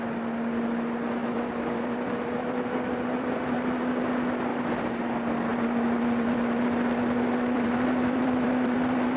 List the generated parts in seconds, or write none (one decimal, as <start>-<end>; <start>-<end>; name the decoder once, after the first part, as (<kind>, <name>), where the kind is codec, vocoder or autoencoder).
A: 1.2-4.1 (vocoder, BigVGAN v2); 4.5-5.0; 5.5-9.2